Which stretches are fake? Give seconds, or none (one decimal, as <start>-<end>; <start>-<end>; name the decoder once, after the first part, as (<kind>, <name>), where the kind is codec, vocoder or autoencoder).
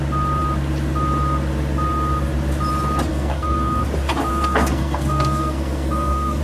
3.1-3.8 (codec, SNAC); 4.3-6.4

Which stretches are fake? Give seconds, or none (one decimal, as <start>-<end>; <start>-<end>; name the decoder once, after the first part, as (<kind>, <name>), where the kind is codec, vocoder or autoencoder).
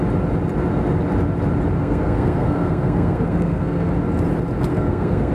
1.8-3.9 (codec, SNAC); 4.7-5.3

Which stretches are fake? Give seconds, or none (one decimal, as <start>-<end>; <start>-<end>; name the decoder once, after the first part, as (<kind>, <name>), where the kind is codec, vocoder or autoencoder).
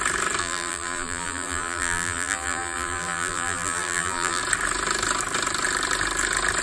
0.4-4.4 (vocoder, BigVGAN v2)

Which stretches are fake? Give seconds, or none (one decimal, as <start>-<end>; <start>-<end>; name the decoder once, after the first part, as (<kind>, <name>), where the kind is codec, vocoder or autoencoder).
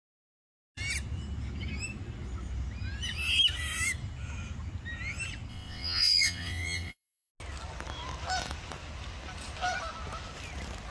5.5-7.3 (vocoder, WaveNeXt)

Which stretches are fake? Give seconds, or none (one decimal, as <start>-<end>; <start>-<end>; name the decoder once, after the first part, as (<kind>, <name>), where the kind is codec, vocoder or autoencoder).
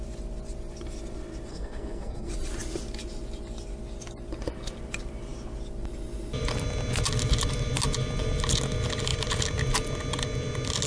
1.5-2.3 (codec, SNAC)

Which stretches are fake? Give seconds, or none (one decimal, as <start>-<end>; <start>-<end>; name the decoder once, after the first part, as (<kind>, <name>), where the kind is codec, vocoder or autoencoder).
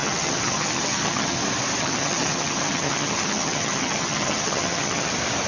0.0-1.4 (vocoder, HiFi-GAN); 1.8-5.1